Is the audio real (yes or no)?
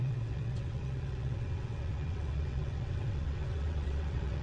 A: no